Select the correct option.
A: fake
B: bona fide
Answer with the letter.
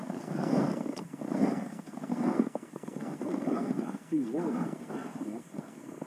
A